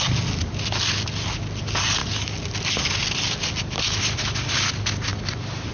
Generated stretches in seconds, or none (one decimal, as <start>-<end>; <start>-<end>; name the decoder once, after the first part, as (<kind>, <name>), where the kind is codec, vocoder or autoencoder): none